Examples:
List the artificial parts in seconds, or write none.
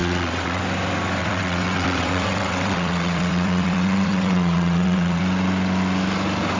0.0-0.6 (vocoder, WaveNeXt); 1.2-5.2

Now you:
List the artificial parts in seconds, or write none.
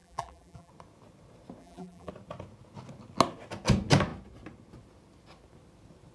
0.0-0.7 (vocoder, BigVGAN v2); 1.6-2.1